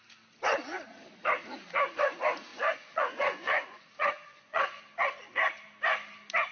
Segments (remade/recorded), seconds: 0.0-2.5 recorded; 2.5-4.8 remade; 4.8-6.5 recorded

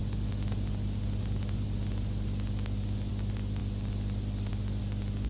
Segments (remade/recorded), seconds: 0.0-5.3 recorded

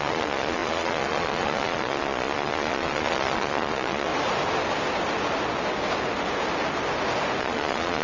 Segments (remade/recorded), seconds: 0.0-4.1 remade; 4.1-7.4 recorded; 7.4-8.0 remade